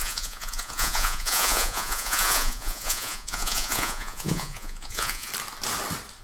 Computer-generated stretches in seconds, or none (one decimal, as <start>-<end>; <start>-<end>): 0.0-5.3